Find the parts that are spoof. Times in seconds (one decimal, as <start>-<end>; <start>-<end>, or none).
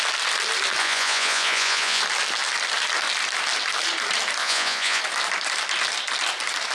0.8-2.0; 4.4-5.0